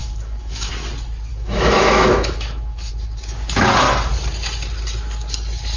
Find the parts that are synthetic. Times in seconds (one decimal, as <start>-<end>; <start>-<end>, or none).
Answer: 0.0-0.7; 1.3-2.9

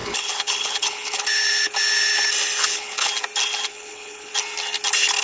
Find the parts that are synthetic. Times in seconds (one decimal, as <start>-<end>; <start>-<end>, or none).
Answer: 0.0-1.2; 2.6-3.1; 3.7-4.3

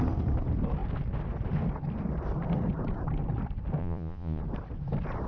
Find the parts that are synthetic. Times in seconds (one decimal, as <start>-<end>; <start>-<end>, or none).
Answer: 3.8-4.4

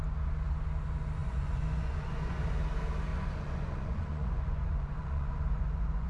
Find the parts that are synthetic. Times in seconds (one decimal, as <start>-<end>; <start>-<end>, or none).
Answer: 1.2-2.4; 3.1-6.1

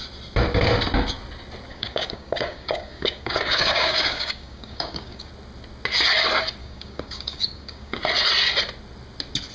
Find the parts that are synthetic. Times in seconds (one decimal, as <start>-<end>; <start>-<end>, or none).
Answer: 1.7-5.3; 6.6-8.0